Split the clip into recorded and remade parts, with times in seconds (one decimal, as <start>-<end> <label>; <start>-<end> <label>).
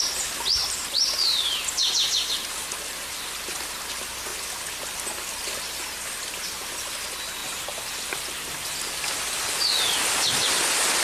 0.0-11.0 recorded